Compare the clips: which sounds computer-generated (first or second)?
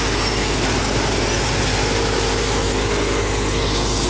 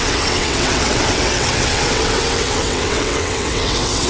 second